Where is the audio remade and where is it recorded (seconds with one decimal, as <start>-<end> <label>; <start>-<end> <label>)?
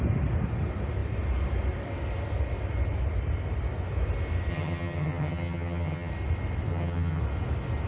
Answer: 0.0-4.5 recorded; 4.5-6.1 remade; 6.1-6.7 recorded; 6.7-7.2 remade; 7.2-7.9 recorded